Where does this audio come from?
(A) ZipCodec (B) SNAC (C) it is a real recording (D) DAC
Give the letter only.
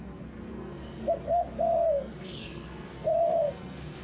B